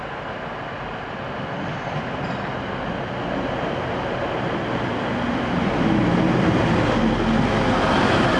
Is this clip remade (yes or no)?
no